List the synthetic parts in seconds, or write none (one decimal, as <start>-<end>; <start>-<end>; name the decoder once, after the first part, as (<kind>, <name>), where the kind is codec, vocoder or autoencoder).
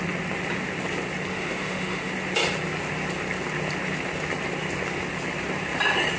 1.3-2.1 (autoencoder, DAC-VAE)